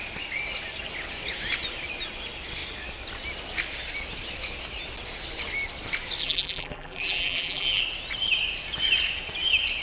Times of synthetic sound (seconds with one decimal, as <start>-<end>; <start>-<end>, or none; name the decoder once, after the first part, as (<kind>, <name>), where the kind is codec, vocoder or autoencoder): 6.2-7.8 (vocoder, BigVGAN v2)